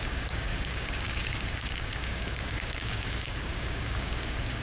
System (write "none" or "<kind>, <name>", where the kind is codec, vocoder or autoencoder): codec, DAC